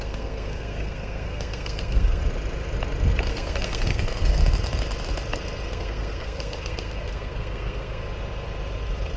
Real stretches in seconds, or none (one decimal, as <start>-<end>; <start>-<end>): 2.2-3.3; 4.4-5.7; 8.0-9.2